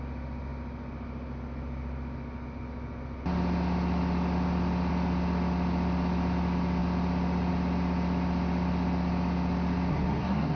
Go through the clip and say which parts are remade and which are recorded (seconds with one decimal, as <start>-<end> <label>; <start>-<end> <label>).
0.0-9.9 recorded; 9.9-10.6 remade